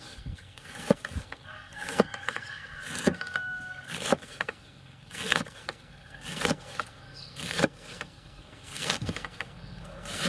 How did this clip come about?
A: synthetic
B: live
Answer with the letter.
A